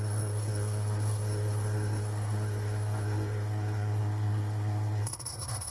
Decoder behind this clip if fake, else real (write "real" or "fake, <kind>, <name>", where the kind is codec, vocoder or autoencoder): fake, codec, SNAC